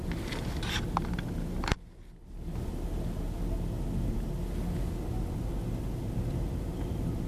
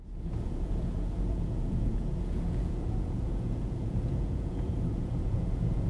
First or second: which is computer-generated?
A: second